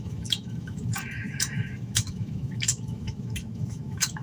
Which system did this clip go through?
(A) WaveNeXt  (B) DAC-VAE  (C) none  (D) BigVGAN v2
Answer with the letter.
B